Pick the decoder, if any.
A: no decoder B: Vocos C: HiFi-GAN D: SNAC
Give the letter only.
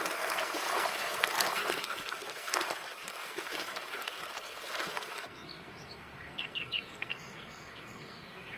D